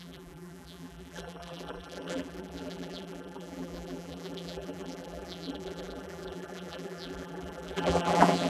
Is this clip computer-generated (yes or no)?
yes